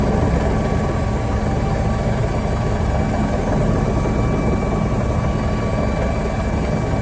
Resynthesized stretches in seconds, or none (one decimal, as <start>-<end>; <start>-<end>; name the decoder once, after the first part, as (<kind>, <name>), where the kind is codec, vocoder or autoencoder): none